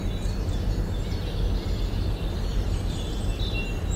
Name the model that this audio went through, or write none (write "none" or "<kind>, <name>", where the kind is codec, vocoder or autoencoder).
none